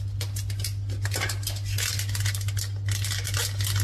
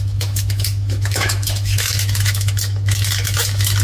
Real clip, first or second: first